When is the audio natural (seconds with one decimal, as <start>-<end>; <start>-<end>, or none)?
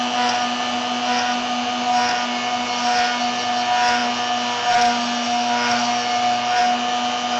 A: 0.0-7.4